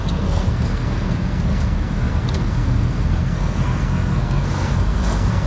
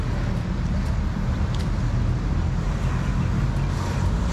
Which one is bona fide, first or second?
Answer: second